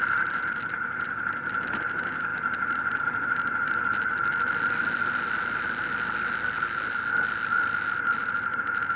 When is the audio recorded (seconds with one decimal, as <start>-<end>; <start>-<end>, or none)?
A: 0.0-9.0